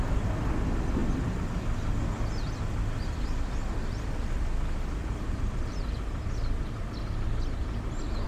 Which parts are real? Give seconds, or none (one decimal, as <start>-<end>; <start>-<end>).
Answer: 0.0-5.0; 5.8-8.3